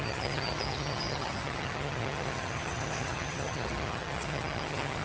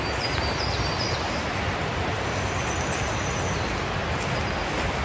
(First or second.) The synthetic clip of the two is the first